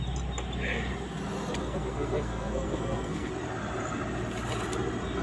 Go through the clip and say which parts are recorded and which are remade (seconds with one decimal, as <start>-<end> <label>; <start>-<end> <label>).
0.0-1.6 recorded; 1.6-3.3 remade; 3.3-5.2 recorded